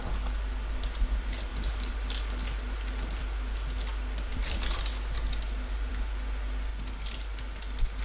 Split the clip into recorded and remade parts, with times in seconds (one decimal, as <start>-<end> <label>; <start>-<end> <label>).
0.0-1.5 recorded; 1.5-3.2 remade; 3.2-6.7 recorded; 6.7-8.0 remade